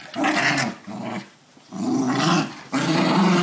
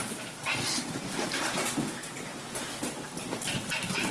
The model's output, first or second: second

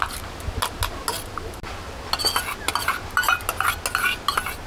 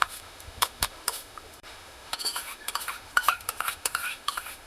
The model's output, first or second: second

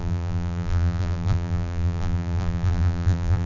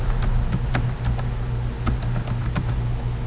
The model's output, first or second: first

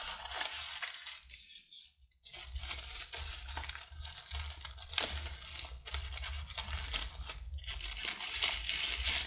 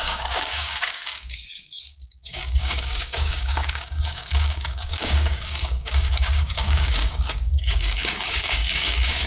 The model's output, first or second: second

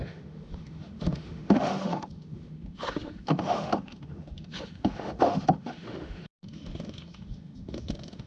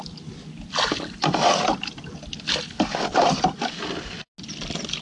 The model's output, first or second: first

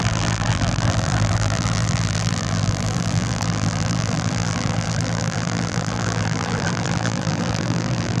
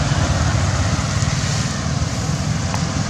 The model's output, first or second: first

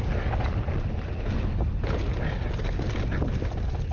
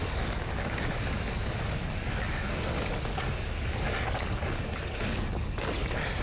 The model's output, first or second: second